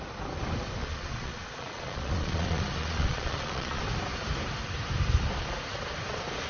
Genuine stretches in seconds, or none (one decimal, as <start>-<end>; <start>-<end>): 0.0-0.8; 3.8-6.5